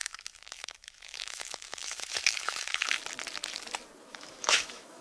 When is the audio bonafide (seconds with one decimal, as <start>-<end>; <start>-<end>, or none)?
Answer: 3.0-4.1